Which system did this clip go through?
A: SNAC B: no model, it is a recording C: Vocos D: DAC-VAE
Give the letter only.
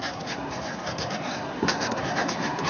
A